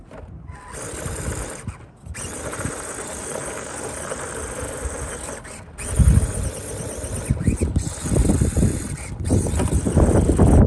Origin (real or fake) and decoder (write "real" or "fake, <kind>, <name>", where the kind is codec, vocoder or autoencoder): real